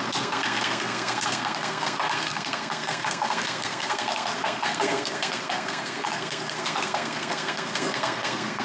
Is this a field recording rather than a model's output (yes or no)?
no